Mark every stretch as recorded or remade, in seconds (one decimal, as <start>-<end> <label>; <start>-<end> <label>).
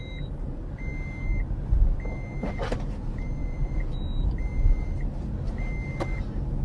0.0-3.4 recorded; 3.4-4.0 remade; 4.0-6.6 recorded